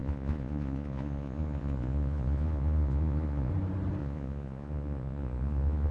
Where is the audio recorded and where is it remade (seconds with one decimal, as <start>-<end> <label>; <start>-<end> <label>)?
0.0-3.5 remade; 3.5-4.0 recorded; 4.0-5.9 remade